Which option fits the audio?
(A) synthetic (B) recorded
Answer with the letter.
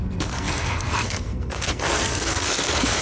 A